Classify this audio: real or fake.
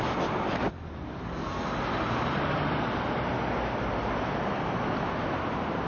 real